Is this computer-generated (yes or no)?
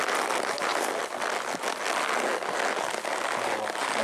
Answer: no